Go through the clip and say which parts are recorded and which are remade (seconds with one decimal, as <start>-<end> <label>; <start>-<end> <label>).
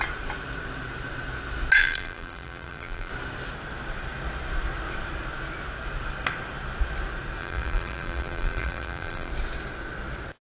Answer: 0.0-1.8 recorded; 1.8-3.1 remade; 3.1-7.4 recorded; 7.4-9.3 remade; 9.3-10.5 recorded